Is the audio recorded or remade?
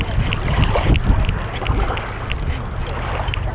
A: recorded